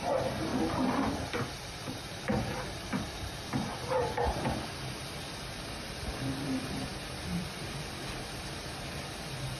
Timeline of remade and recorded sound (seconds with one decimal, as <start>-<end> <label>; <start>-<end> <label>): 0.0-9.6 remade